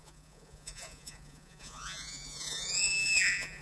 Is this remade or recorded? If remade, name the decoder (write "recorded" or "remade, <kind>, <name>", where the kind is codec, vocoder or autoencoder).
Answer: remade, vocoder, Vocos